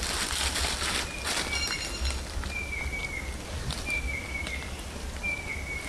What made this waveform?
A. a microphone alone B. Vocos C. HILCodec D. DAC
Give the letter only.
A